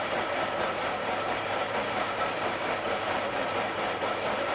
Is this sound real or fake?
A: fake